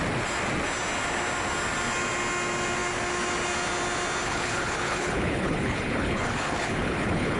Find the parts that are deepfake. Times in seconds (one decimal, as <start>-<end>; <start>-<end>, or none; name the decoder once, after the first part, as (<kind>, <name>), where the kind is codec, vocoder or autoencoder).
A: 4.2-7.4 (codec, HILCodec)